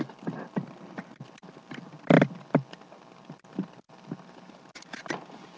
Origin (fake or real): real